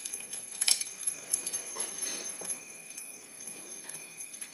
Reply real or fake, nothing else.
fake